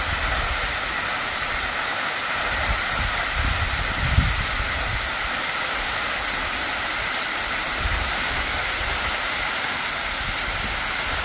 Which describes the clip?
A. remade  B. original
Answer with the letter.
B